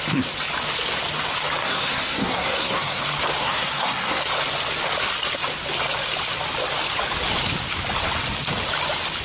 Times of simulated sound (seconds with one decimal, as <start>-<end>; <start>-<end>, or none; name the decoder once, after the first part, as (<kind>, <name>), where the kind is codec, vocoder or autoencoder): 1.6-3.0 (codec, SNAC); 3.4-4.2